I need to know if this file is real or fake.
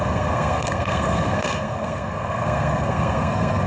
fake